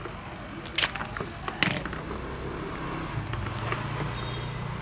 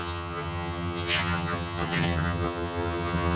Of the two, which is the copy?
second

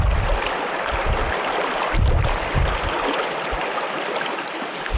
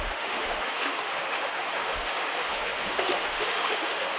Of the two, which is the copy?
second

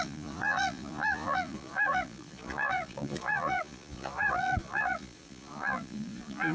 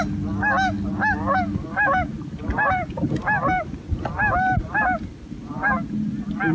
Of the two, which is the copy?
first